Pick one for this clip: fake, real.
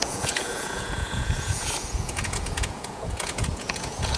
fake